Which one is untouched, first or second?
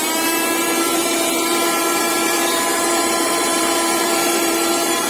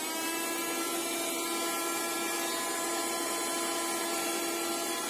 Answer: second